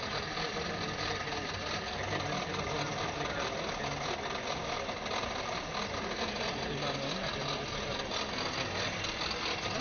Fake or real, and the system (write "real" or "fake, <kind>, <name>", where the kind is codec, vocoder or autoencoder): real